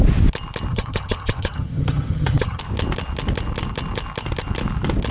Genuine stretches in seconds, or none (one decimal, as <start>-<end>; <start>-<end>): 0.0-0.7; 2.6-5.1